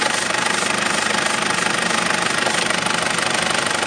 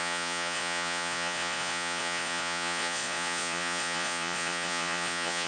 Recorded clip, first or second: first